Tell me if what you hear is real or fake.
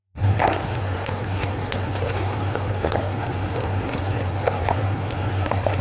fake